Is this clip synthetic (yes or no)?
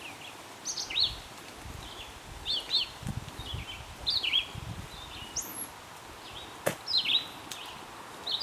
no